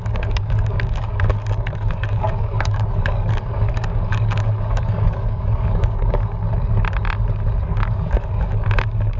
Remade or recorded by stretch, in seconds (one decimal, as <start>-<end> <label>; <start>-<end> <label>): 0.0-6.4 remade; 6.4-7.6 recorded; 7.6-9.2 remade